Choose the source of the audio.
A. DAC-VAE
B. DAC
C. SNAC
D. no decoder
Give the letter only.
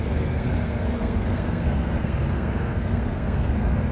C